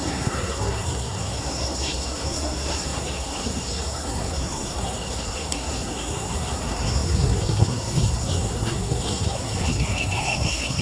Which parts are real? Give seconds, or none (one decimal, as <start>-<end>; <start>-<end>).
none